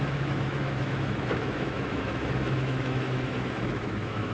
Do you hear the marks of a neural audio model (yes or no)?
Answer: yes